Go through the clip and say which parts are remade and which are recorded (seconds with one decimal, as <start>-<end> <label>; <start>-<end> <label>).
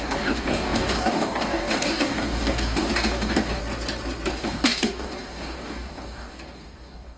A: 0.0-3.6 remade; 3.6-4.3 recorded; 4.3-7.2 remade